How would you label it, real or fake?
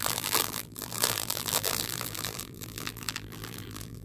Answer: fake